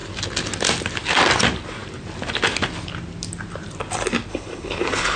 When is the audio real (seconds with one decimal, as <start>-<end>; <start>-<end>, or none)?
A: 0.0-4.3

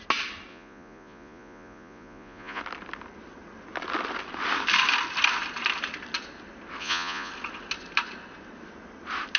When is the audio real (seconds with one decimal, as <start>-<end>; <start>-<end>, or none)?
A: 0.0-0.5; 2.6-6.8; 7.3-9.4

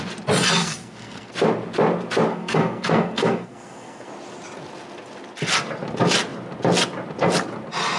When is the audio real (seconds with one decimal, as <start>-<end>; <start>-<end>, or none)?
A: 0.0-0.6; 1.3-2.3; 4.1-8.0